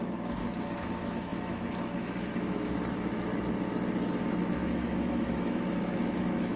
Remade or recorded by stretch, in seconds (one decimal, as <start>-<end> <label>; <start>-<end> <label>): 0.0-3.3 remade; 3.3-4.5 recorded; 4.5-6.6 remade